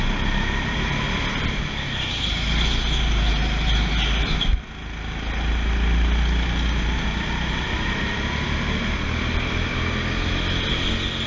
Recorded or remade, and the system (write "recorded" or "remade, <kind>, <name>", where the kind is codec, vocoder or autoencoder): recorded